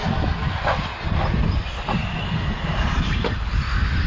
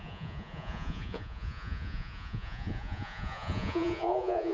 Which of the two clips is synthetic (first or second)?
second